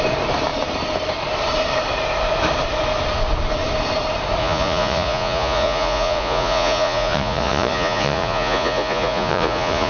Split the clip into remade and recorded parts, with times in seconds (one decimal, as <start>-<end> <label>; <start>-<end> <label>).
0.0-4.4 recorded; 4.4-9.9 remade